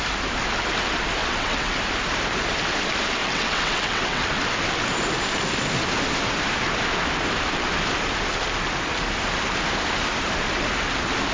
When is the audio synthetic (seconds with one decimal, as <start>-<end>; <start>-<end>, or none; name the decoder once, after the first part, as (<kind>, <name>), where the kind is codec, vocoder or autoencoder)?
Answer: 1.2-1.8 (vocoder, WaveNeXt); 3.2-4.3